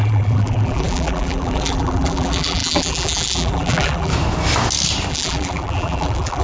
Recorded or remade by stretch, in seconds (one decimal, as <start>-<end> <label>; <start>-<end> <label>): 0.0-4.1 remade; 4.1-5.1 recorded; 5.1-6.4 remade